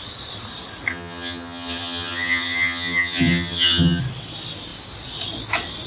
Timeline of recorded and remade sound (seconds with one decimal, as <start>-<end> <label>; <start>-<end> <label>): 0.0-0.9 recorded; 0.9-4.0 remade; 4.0-5.9 recorded